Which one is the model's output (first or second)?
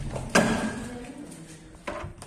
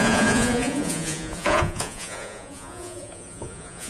second